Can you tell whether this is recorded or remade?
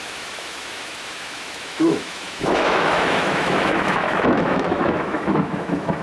remade